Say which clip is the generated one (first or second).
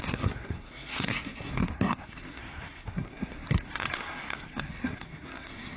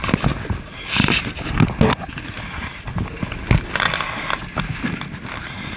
first